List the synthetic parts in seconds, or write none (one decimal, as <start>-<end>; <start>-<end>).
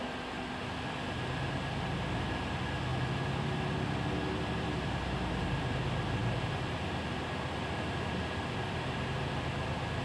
none